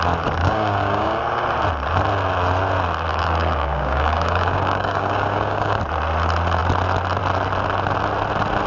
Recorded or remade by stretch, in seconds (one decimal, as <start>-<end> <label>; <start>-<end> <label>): 0.0-0.4 recorded; 0.4-1.2 remade; 1.2-3.1 recorded; 3.1-5.8 remade; 5.8-8.7 recorded